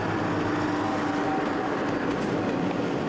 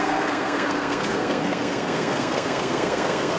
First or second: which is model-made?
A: second